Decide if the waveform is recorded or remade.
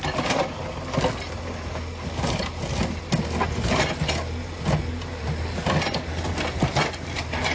recorded